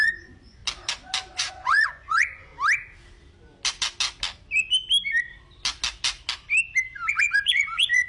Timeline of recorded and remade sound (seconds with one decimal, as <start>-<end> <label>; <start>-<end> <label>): 0.0-0.6 remade; 0.6-1.5 recorded; 1.5-2.5 remade; 2.5-7.1 recorded; 7.1-8.1 remade